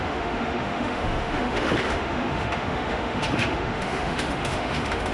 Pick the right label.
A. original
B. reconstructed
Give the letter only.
B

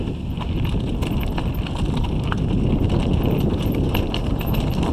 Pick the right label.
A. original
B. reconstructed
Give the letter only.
A